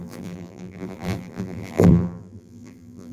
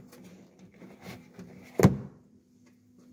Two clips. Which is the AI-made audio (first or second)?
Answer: first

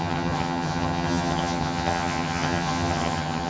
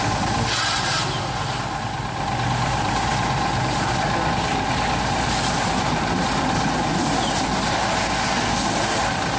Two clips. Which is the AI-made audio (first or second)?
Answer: first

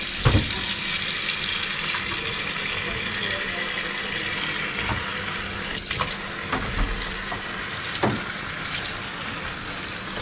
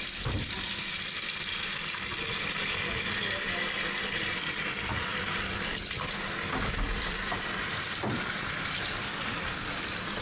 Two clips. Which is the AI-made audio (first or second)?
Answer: second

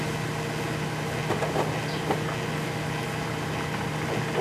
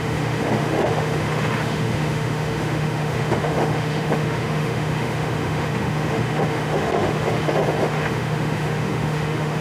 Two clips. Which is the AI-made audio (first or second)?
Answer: second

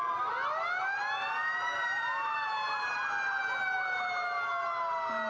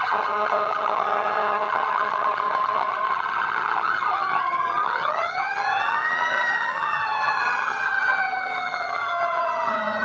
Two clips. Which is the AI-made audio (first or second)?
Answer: second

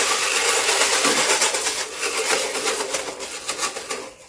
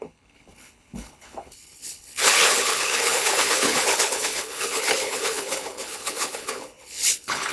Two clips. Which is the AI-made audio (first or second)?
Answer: second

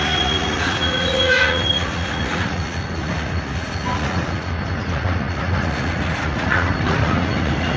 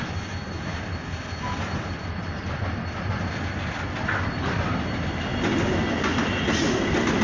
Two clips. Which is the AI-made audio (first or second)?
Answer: first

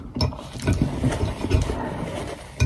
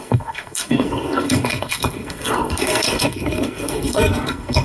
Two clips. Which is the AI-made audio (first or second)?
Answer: second